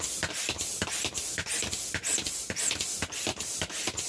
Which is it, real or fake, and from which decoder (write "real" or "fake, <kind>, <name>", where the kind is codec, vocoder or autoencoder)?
real